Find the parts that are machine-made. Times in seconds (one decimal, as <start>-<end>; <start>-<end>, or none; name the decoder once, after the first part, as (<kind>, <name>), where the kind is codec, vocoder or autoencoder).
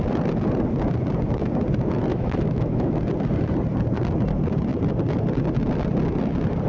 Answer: 2.1-3.0 (autoencoder, DAC-VAE)